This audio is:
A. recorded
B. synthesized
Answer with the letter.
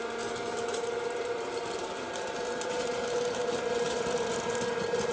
B